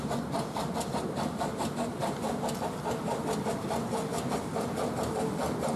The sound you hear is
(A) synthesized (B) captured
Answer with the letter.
B